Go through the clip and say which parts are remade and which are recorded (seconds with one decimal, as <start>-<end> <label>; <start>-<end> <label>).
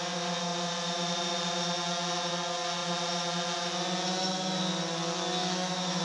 0.0-5.4 recorded; 5.4-6.0 remade